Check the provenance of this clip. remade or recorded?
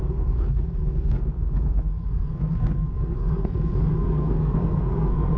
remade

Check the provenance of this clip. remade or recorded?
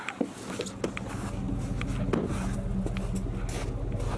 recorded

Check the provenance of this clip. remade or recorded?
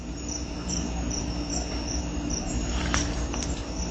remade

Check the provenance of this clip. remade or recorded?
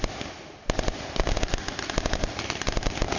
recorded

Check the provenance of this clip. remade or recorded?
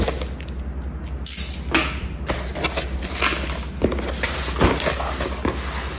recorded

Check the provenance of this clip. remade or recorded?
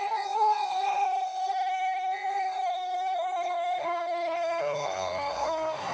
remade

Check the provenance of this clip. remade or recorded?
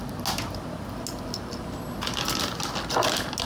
recorded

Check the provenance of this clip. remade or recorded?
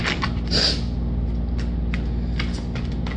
recorded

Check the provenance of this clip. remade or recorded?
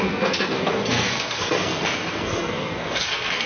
remade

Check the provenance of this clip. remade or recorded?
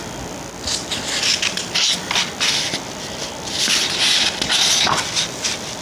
recorded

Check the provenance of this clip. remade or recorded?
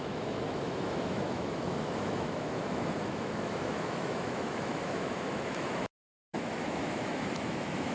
remade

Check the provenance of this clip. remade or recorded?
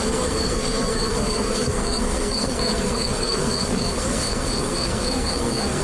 remade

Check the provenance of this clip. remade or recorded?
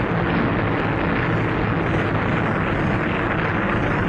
recorded